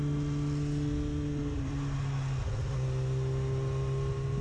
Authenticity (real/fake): real